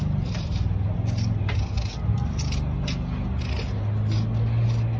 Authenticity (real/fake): real